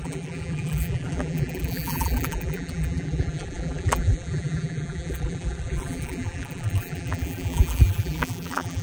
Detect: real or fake fake